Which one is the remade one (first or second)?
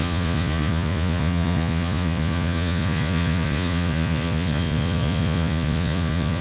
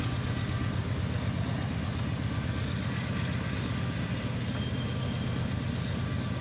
first